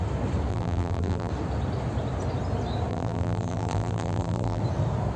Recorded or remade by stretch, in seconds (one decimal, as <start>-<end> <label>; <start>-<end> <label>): 0.0-0.5 recorded; 0.5-1.3 remade; 1.3-2.9 recorded; 2.9-4.6 remade; 4.6-5.2 recorded